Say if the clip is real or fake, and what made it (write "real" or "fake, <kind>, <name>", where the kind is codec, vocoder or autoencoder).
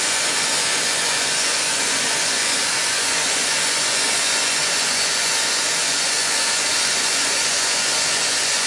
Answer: fake, vocoder, Vocos